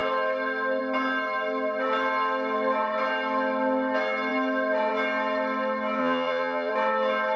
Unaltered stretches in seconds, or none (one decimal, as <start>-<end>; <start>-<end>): 0.0-6.0; 6.7-7.4